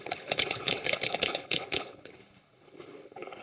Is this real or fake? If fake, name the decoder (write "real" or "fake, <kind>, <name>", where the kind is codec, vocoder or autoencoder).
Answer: fake, codec, HILCodec